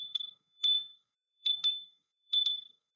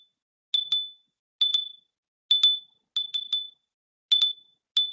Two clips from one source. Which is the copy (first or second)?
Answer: first